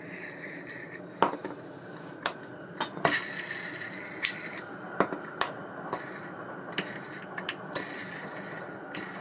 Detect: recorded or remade recorded